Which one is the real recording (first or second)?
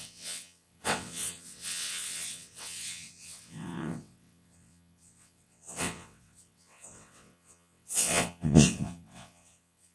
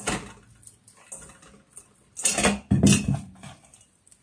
second